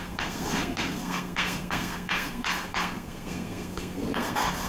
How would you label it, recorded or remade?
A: remade